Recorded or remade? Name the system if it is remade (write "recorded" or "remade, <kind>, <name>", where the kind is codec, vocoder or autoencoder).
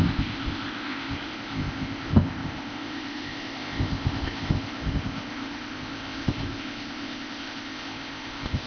remade, codec, ZipCodec